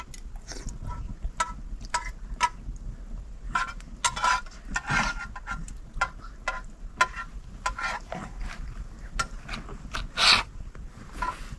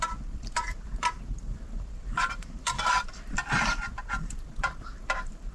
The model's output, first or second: second